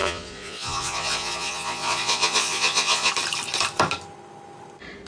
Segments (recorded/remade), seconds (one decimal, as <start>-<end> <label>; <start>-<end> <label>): 0.0-3.1 remade; 3.1-5.1 recorded